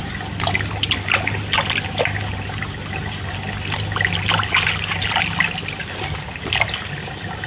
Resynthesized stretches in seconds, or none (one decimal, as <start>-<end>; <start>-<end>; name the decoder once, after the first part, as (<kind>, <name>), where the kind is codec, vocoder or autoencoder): none